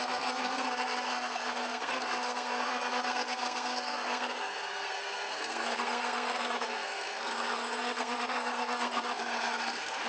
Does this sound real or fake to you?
fake